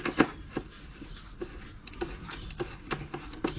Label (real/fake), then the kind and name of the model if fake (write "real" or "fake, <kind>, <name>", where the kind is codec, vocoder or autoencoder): real